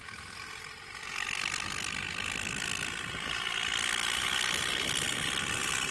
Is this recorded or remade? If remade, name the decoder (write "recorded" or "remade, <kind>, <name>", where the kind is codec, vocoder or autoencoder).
recorded